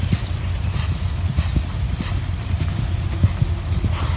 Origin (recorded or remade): recorded